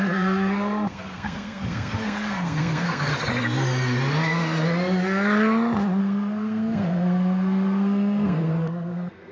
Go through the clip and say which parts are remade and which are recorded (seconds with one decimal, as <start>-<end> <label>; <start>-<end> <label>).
0.0-3.1 remade; 3.1-6.0 recorded; 6.0-9.3 remade